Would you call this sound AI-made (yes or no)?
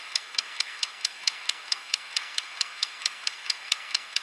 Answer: yes